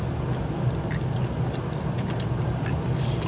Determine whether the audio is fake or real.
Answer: real